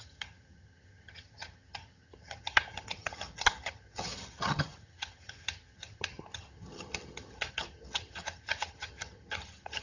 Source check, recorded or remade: remade